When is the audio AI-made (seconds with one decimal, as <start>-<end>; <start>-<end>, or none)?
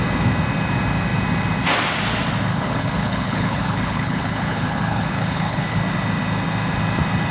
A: 2.5-5.8